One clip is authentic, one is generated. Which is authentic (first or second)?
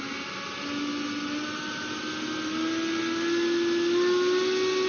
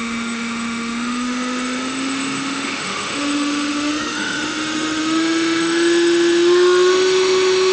first